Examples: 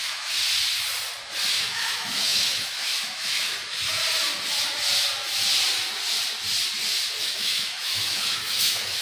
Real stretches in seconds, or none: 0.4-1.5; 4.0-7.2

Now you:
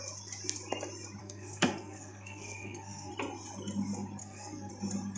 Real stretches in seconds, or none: 0.0-1.2; 3.1-4.2; 4.7-5.2

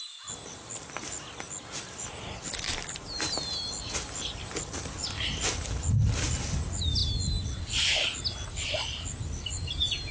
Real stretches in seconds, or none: 0.0-10.1

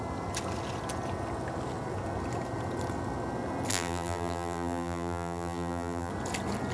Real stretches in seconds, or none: 0.0-3.7; 6.1-6.7

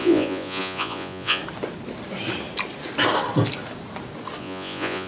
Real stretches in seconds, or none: 1.4-4.4

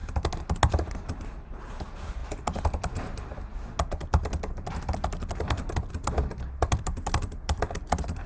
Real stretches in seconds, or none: 0.0-1.0; 2.2-2.7; 3.5-6.8